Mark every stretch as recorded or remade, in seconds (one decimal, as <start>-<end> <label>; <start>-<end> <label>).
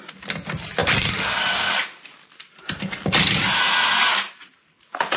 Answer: 0.0-0.8 recorded; 0.8-2.6 remade; 2.6-5.2 recorded